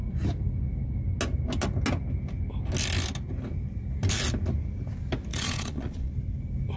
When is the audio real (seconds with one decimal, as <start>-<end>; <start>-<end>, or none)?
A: 0.0-5.3; 6.1-6.8

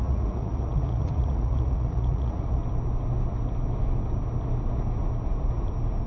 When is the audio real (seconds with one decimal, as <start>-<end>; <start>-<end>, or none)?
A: 2.6-6.1

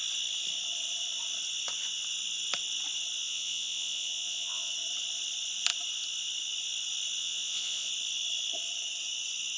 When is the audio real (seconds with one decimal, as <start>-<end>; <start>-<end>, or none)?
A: 0.0-3.2; 4.7-7.2; 7.9-9.6

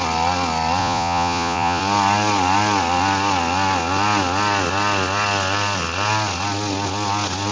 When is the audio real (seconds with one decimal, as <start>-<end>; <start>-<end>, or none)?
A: 0.0-0.8; 1.8-7.5

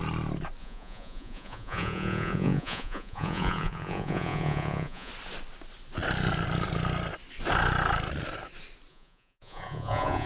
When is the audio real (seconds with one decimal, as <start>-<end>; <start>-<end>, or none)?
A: 0.0-0.6; 5.1-8.9